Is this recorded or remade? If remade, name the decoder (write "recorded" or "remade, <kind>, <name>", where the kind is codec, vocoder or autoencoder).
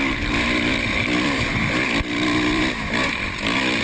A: remade, vocoder, BigVGAN v2